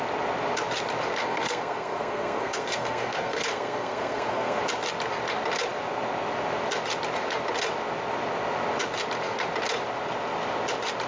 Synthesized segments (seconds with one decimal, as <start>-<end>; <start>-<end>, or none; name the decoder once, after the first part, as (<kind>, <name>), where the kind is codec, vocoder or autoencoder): 1.2-4.6 (codec, SNAC)